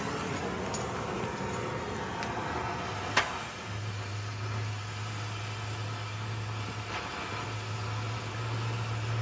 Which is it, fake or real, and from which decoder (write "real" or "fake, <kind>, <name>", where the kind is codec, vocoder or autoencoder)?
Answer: real